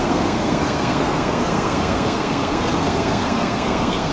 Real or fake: fake